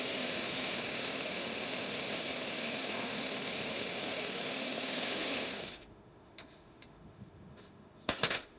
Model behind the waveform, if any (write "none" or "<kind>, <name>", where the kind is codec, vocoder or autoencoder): autoencoder, DAC-VAE